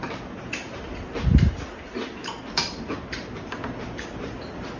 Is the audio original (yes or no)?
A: yes